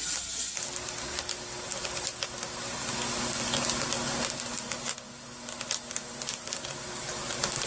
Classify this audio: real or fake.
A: real